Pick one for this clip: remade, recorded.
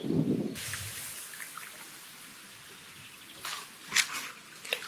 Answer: recorded